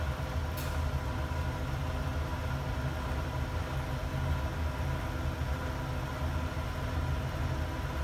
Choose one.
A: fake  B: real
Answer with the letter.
B